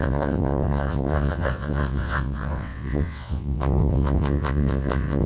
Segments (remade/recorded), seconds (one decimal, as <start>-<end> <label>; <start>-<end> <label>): 0.0-5.3 remade